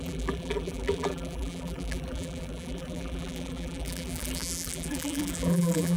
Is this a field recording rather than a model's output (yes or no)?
no